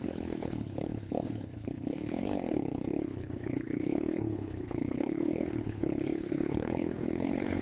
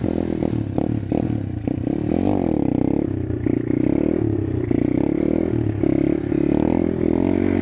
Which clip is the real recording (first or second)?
second